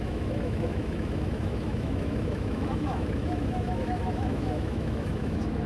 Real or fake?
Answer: fake